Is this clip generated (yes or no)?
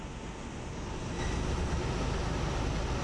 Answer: no